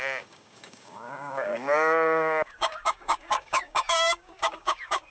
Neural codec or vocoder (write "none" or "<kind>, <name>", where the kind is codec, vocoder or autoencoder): codec, DAC